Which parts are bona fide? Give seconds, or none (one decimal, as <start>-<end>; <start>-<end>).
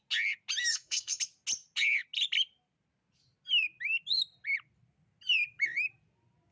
0.0-0.7; 1.2-6.5